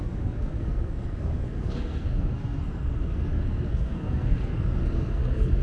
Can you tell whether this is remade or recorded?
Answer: remade